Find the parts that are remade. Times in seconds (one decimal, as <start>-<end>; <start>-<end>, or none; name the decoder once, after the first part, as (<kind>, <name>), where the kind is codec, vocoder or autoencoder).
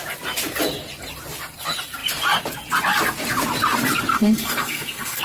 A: 4.1-5.2 (codec, SNAC)